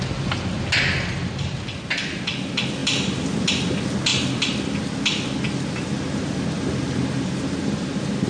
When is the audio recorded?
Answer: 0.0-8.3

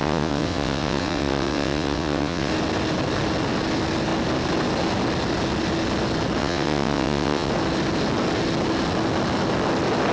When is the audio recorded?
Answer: 2.5-6.4; 7.5-10.1

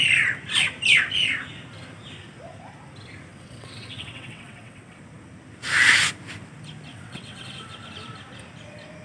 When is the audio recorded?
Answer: 0.0-3.3; 5.0-6.9; 7.7-9.0

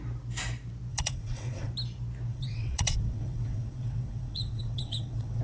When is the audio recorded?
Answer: 0.0-0.9; 1.7-2.3

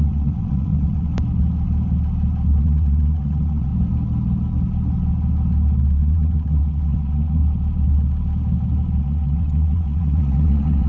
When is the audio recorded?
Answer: 1.1-2.6; 3.7-6.0; 7.4-9.0

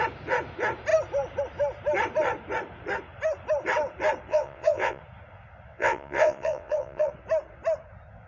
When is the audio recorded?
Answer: 0.0-4.3; 5.0-5.7; 7.1-8.3